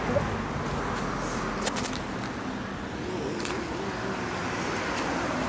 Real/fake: real